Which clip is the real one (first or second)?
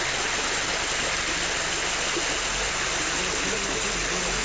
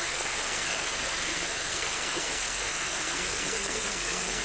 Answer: first